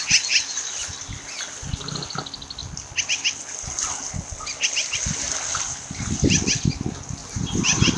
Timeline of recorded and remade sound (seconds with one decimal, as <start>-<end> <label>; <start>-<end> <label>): 0.0-7.2 recorded; 7.2-8.0 remade